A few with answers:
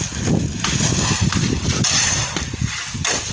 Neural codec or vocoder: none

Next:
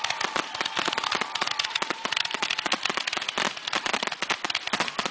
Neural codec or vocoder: none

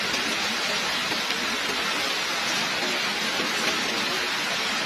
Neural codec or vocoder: none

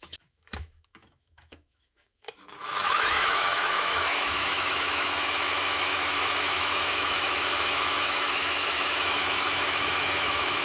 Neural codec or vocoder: autoencoder, DAC-VAE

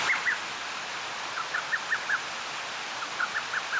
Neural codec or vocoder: none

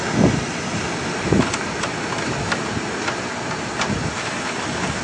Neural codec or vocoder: none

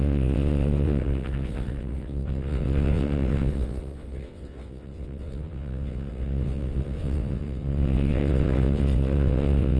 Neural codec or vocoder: vocoder, WaveNeXt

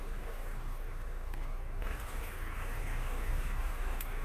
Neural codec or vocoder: codec, DAC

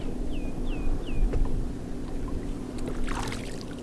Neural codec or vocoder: none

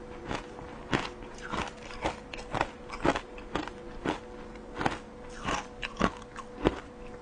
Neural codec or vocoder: none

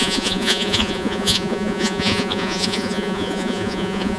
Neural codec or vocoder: vocoder, Vocos